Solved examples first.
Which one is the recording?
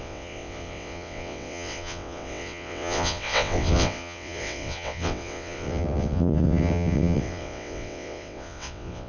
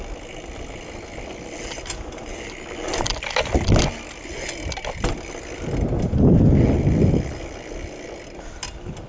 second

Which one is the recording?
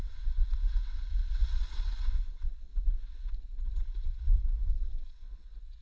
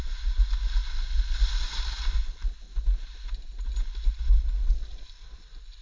second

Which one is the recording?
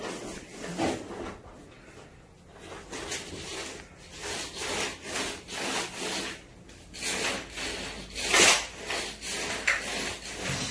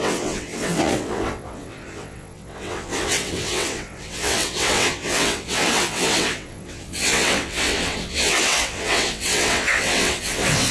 first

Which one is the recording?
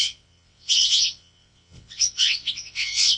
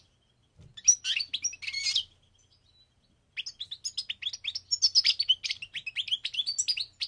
second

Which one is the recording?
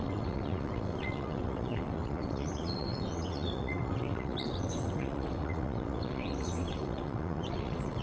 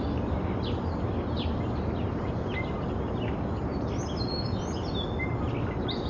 second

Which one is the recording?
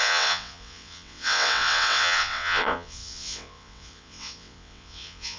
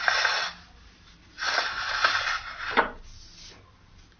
second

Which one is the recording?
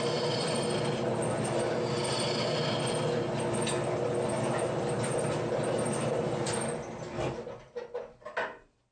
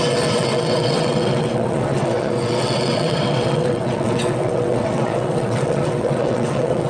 first